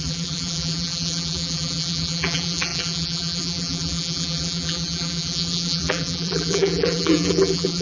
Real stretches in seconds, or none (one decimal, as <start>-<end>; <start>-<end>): none